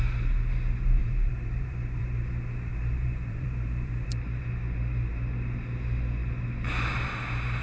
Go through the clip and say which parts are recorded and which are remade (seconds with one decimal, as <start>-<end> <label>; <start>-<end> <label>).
0.0-1.0 recorded; 1.0-2.0 remade; 2.0-2.7 recorded; 2.7-4.4 remade; 4.4-7.6 recorded